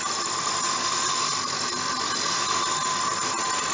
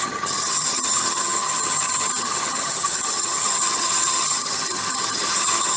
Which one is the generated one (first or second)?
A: second